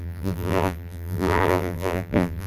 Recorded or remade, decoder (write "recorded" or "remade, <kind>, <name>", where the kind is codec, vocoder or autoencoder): remade, vocoder, BigVGAN v2